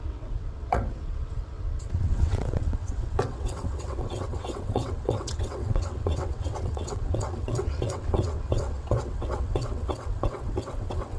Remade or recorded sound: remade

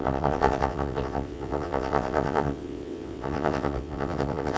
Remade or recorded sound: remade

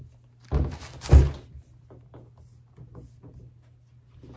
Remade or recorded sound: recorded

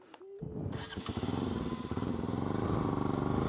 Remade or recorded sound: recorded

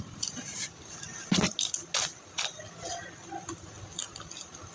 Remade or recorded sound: recorded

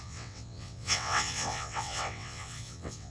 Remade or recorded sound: remade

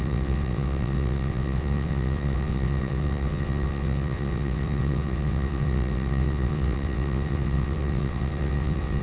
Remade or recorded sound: remade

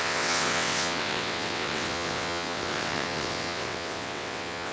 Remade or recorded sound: remade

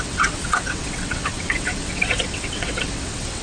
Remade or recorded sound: remade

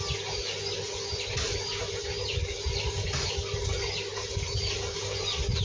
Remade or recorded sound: recorded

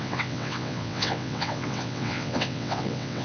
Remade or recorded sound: remade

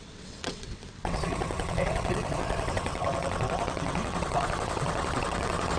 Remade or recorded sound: remade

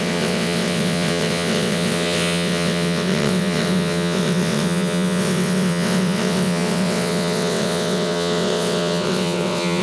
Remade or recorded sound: remade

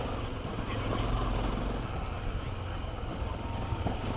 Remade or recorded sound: recorded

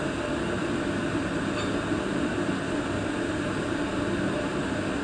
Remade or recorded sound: recorded